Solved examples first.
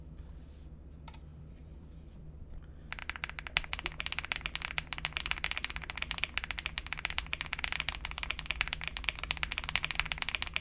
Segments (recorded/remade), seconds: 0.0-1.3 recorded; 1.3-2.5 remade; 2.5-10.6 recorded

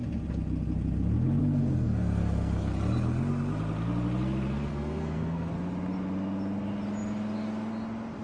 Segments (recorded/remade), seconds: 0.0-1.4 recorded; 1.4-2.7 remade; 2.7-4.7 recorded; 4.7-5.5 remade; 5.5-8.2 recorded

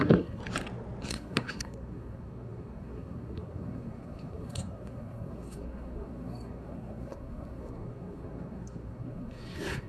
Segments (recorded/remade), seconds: 0.0-0.4 remade; 0.4-1.1 recorded; 1.1-9.9 remade

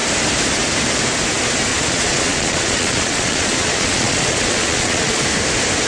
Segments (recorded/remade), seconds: 0.0-1.7 recorded; 1.7-5.2 remade; 5.2-5.9 recorded